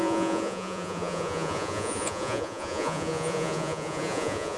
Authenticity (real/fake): fake